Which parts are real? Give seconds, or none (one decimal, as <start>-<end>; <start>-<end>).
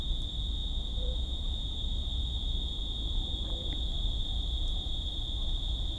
none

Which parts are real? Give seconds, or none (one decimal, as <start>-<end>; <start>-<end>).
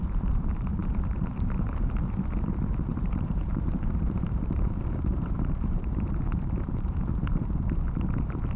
0.0-0.8; 1.8-2.9; 7.8-8.6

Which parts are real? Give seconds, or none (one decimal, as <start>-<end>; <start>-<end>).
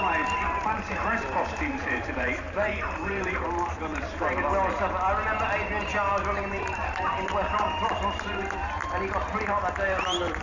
3.9-6.6; 8.8-10.0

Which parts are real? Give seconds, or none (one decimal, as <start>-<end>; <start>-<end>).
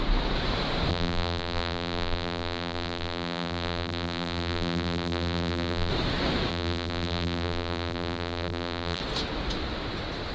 0.0-0.9; 5.9-6.5; 9.0-10.3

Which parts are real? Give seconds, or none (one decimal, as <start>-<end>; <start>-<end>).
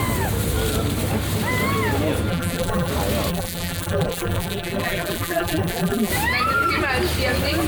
0.0-2.3; 2.9-3.3; 6.1-7.7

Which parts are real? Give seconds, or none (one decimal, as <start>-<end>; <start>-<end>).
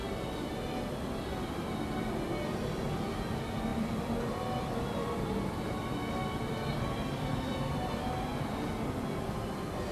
0.5-3.7; 7.8-9.9